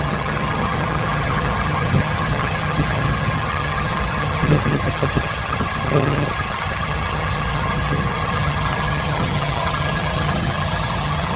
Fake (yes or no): yes